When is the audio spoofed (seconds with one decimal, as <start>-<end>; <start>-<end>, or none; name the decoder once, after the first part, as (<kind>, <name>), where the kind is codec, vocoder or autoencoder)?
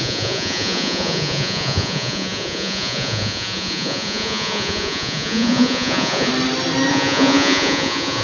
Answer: 0.0-6.3 (vocoder, Vocos); 6.9-8.2